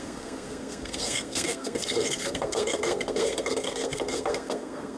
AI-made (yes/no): yes